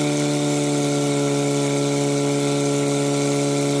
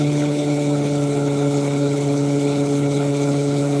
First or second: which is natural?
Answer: first